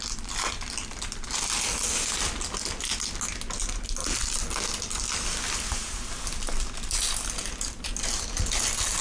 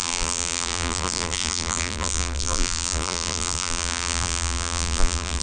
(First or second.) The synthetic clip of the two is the second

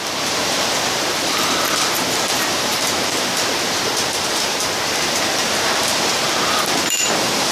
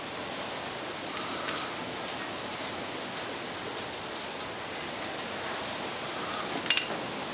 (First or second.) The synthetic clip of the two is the first